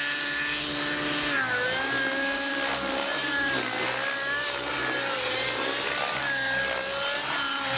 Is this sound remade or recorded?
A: recorded